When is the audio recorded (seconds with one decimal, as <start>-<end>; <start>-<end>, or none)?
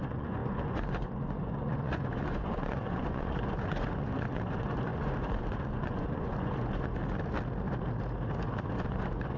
7.0-8.8